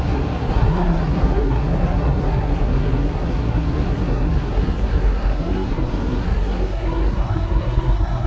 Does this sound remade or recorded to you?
remade